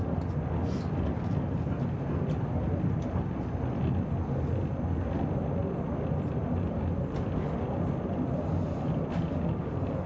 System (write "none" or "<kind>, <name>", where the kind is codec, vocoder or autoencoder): none